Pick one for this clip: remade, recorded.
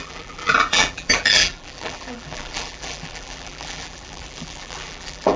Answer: remade